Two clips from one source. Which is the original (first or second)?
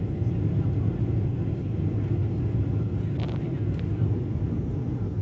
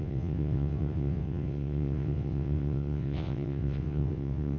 first